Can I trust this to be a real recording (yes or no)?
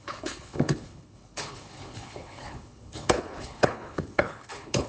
no